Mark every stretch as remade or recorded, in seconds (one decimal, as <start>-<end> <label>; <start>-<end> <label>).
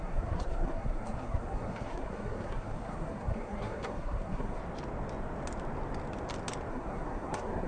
0.0-4.6 remade; 4.6-6.7 recorded; 6.7-7.7 remade